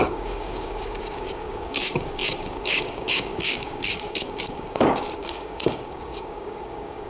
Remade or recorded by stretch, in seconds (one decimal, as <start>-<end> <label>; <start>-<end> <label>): 0.0-7.1 remade